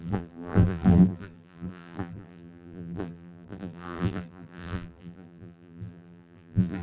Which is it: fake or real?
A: fake